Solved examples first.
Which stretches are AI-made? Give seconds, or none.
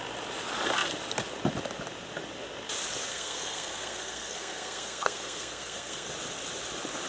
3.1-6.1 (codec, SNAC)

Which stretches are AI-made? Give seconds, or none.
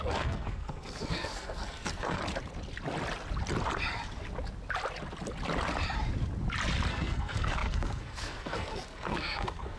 0.0-2.2 (codec, SNAC); 6.9-9.8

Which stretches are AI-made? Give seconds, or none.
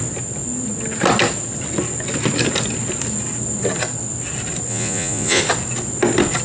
4.7-5.4 (vocoder, Vocos)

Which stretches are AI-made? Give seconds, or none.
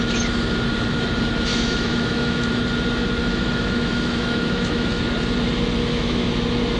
1.5-2.5 (autoencoder, DAC-VAE); 3.2-5.0; 5.8-6.3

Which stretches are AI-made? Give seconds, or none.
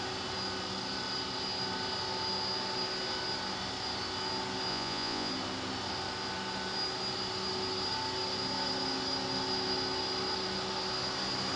4.7-5.3 (vocoder, Vocos)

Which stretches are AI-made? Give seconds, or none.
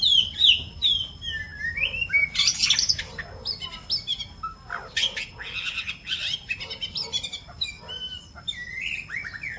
none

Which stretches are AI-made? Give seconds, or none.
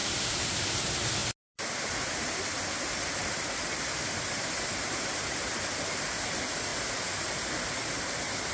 0.0-0.6 (vocoder, BigVGAN v2)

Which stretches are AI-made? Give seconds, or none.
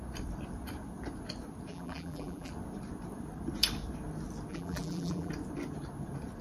1.7-2.5 (vocoder, BigVGAN v2); 4.5-5.3